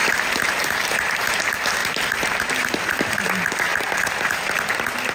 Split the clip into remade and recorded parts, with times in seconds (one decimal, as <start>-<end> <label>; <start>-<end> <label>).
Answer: 0.0-1.4 remade; 1.4-1.8 recorded; 1.8-2.5 remade; 2.5-3.7 recorded; 3.7-4.3 remade; 4.3-5.1 recorded